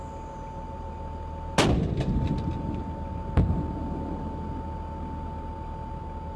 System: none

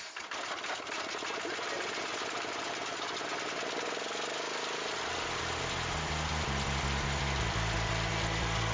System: none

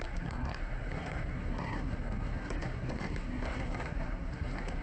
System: codec, SNAC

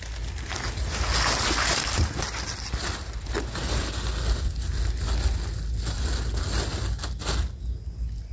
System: none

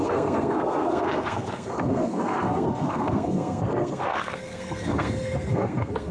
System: codec, SNAC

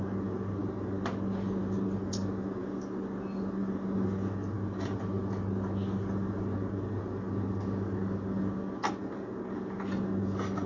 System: none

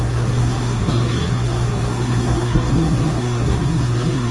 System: codec, SNAC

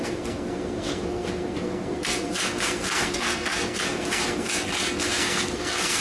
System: codec, SNAC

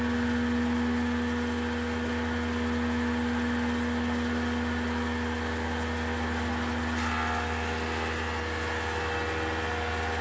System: none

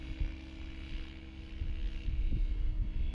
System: none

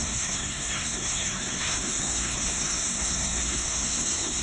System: codec, SNAC